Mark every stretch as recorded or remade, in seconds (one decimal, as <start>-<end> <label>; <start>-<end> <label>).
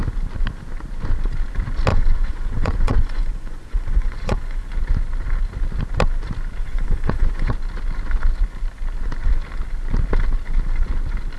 0.0-1.9 recorded; 1.9-4.7 remade; 4.7-6.6 recorded; 6.6-7.5 remade; 7.5-11.4 recorded